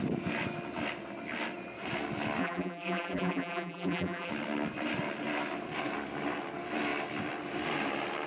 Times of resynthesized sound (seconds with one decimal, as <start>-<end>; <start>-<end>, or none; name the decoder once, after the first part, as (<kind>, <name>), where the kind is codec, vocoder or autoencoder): 2.4-4.3 (vocoder, BigVGAN v2)